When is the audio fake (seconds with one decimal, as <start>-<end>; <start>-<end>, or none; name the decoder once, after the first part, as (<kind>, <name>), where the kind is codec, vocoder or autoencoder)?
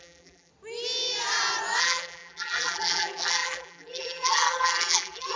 0.0-0.5 (vocoder, BigVGAN v2); 1.8-5.4